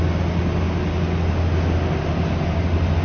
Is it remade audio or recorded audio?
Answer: recorded